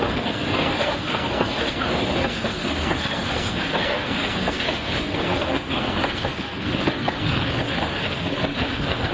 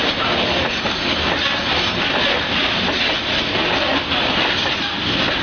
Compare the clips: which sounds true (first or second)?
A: second